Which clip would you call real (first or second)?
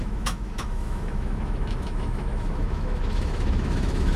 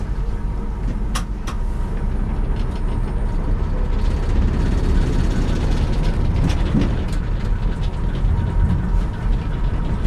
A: second